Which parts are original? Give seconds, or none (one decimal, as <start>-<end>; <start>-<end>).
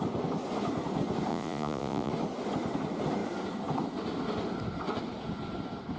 0.0-1.3; 2.1-6.0